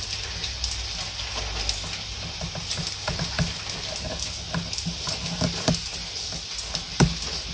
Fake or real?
real